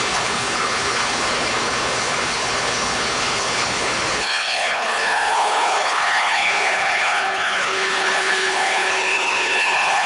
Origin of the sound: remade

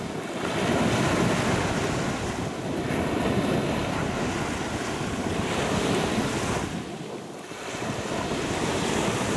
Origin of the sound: recorded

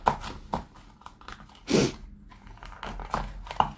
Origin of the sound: recorded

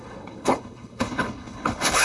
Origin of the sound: remade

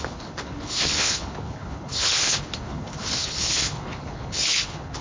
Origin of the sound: remade